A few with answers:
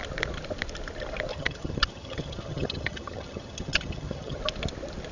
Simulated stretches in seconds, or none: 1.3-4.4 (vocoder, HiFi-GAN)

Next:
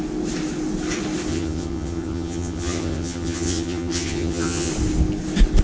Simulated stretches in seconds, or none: 1.3-4.7 (vocoder, HiFi-GAN)

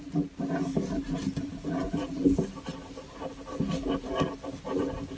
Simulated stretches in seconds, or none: none

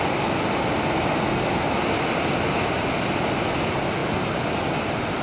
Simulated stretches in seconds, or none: none

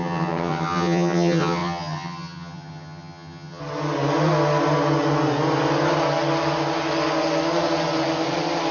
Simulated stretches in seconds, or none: 0.0-3.6 (vocoder, HiFi-GAN)

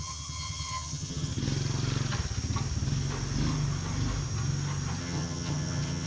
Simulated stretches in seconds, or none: 0.0-1.3 (vocoder, HiFi-GAN); 5.0-6.1